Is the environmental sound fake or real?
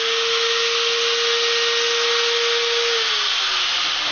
real